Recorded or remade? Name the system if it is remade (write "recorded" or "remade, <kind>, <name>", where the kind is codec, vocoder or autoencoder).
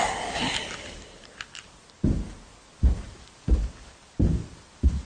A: recorded